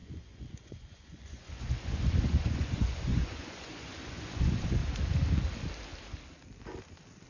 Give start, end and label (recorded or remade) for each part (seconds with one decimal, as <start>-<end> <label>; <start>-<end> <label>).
0.0-4.8 remade; 4.8-7.3 recorded